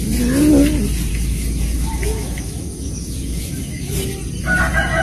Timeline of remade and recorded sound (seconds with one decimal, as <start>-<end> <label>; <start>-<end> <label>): 0.0-1.1 recorded; 1.1-4.1 remade; 4.1-5.0 recorded